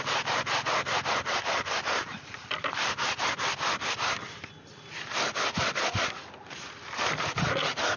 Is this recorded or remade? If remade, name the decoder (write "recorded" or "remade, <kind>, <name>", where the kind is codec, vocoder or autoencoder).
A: recorded